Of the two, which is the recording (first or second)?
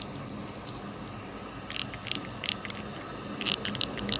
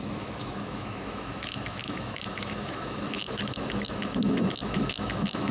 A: first